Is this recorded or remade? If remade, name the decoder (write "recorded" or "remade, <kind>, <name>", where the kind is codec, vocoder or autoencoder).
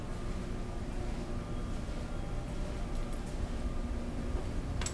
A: recorded